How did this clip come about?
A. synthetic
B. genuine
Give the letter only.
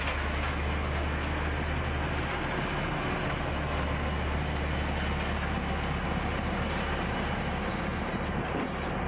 B